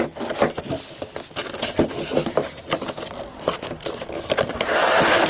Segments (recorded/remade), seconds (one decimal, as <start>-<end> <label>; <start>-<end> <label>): 0.0-1.4 recorded; 1.4-4.4 remade; 4.4-5.3 recorded